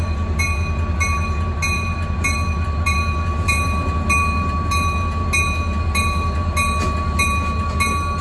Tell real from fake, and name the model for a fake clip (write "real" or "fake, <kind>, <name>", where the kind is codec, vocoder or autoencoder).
real